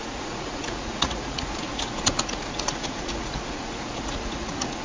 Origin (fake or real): fake